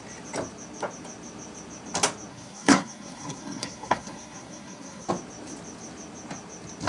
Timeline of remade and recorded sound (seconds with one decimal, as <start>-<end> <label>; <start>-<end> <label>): 0.0-2.3 recorded; 2.3-5.1 remade; 5.1-6.9 recorded

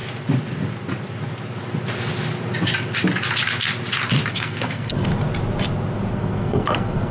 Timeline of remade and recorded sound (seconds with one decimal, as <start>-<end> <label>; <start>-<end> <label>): 0.0-4.3 recorded; 4.3-5.1 remade; 5.1-6.1 recorded; 6.1-7.1 remade

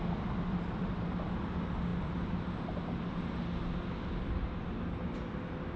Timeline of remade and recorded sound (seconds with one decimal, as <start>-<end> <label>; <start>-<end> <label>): 0.0-5.8 recorded

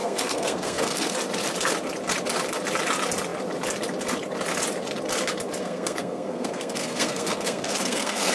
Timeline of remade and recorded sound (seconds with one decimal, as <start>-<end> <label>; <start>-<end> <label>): 0.0-1.1 remade; 1.1-5.6 recorded; 5.6-8.3 remade

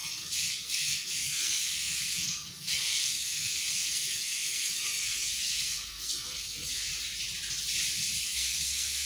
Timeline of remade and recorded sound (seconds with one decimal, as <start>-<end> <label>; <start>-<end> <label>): 0.0-6.9 remade; 6.9-8.2 recorded; 8.2-9.1 remade

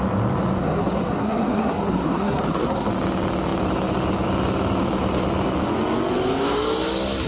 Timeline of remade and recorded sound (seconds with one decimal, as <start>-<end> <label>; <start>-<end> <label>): 0.0-0.6 recorded; 0.6-2.9 remade; 2.9-7.3 recorded

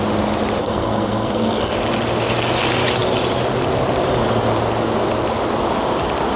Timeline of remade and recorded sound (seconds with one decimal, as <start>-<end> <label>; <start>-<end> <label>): 0.0-0.6 recorded; 0.6-1.7 remade; 1.7-6.4 recorded

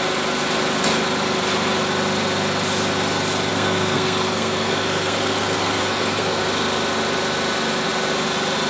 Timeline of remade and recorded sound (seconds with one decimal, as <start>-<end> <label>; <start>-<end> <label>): 0.0-3.5 recorded; 3.5-6.4 remade; 6.4-8.7 recorded